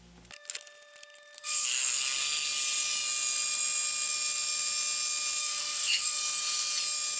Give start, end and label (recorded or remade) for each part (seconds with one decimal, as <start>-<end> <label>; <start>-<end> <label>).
0.0-1.4 recorded; 1.4-2.0 remade; 2.0-5.4 recorded; 5.4-6.2 remade; 6.2-7.2 recorded